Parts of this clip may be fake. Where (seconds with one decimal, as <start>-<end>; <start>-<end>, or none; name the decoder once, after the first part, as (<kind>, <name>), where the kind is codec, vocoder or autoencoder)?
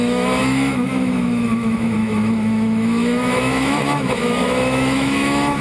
0.0-5.6 (autoencoder, DAC-VAE)